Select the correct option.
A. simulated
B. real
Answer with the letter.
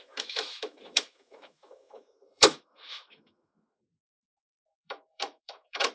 A